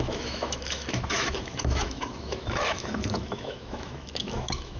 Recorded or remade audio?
remade